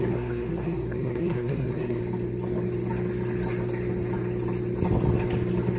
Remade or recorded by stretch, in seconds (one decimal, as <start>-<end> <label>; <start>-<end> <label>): 0.0-2.0 remade; 2.0-5.8 recorded